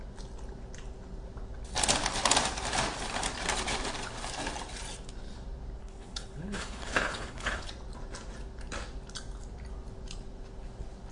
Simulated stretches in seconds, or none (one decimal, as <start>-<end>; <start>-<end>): 5.8-7.7